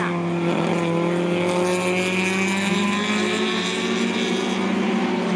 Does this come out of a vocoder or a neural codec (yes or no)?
no